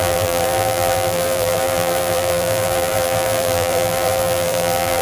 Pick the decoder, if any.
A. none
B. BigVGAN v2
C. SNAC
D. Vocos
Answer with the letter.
B